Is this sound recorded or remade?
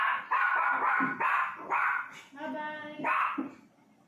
recorded